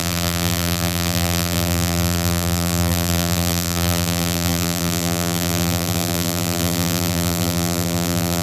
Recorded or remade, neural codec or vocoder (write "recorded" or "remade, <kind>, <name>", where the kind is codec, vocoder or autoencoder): remade, vocoder, BigVGAN v2